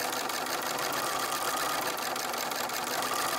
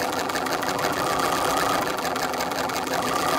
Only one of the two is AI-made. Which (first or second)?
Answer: second